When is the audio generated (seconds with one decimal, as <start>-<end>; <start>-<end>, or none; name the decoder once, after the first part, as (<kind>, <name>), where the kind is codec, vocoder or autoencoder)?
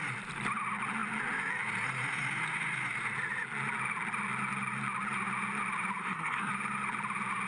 6.0-6.5 (codec, SNAC)